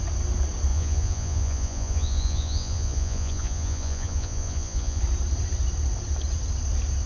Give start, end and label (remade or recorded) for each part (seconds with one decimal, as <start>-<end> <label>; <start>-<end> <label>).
0.0-0.7 recorded; 0.7-5.0 remade; 5.0-7.1 recorded

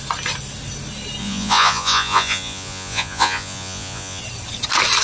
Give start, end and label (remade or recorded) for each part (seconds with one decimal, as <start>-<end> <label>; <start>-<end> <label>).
0.0-1.2 recorded; 1.2-4.2 remade; 4.2-5.0 recorded

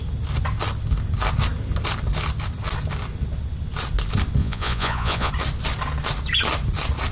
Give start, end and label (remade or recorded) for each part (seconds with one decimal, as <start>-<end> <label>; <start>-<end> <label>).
0.0-4.4 recorded; 4.4-5.3 remade; 5.3-7.1 recorded

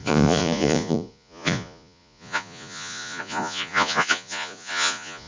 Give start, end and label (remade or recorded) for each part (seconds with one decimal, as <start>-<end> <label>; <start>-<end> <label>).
0.0-5.3 remade

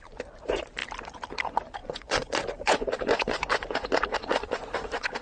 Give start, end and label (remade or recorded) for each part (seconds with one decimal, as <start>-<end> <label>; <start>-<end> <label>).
0.0-1.8 recorded; 1.8-5.2 remade

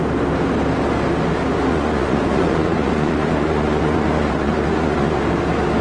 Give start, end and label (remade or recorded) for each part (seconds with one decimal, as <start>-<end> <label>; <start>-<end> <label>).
0.0-1.7 recorded; 1.7-5.2 remade; 5.2-5.8 recorded

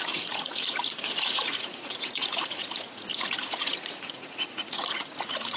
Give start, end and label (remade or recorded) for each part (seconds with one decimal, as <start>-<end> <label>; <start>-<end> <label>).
0.0-5.6 remade